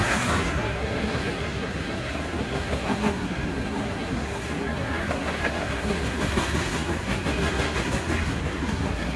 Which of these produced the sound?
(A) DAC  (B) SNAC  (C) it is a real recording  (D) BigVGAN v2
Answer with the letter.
B